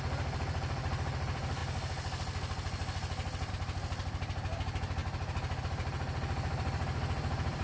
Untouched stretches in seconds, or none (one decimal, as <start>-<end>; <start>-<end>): 1.6-3.5; 5.0-5.6